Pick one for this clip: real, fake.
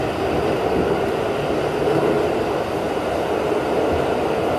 real